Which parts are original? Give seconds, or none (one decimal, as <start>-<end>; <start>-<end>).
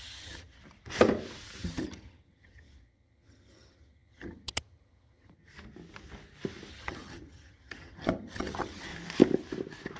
0.6-1.6; 5.5-6.7; 8.9-10.0